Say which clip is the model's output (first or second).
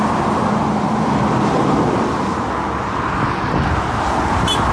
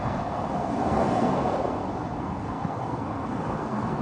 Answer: second